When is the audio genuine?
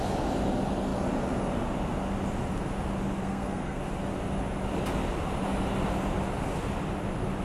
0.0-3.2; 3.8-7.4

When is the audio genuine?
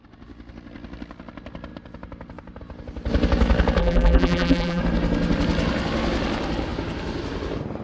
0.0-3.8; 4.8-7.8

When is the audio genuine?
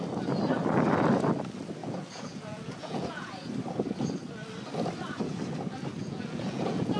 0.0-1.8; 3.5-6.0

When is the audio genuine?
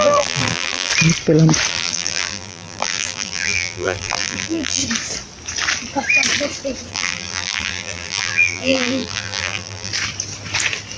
0.9-1.7; 4.8-6.9; 9.9-11.0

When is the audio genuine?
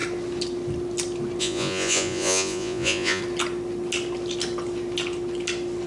0.0-1.4; 3.2-5.9